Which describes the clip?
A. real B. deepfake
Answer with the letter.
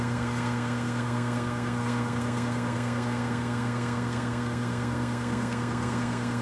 B